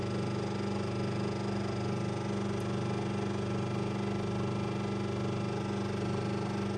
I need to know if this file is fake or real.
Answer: real